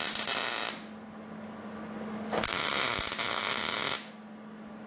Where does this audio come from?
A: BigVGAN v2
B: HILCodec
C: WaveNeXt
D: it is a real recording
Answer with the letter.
D